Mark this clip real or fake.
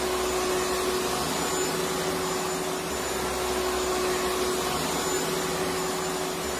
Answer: real